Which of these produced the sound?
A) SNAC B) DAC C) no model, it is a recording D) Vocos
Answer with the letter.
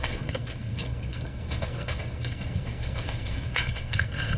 A